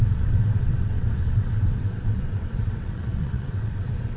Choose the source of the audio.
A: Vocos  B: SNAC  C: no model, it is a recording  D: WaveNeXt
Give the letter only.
D